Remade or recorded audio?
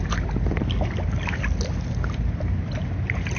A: recorded